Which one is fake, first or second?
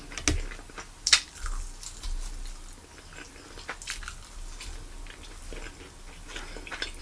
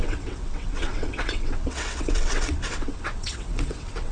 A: second